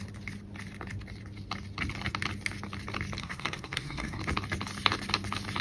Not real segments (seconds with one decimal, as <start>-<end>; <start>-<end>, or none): 3.2-4.2